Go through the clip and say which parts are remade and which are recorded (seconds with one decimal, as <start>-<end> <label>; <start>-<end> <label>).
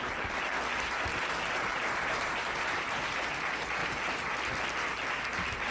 0.0-1.7 recorded; 1.7-2.4 remade; 2.4-5.7 recorded